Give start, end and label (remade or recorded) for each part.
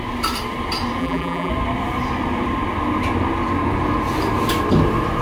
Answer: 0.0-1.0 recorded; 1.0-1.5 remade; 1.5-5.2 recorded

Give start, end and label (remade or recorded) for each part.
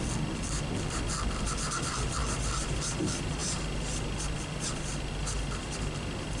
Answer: 0.0-6.4 recorded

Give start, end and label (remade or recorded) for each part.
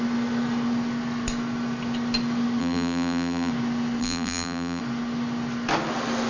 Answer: 0.0-2.6 recorded; 2.6-3.5 remade; 3.5-4.0 recorded; 4.0-4.8 remade; 4.8-6.3 recorded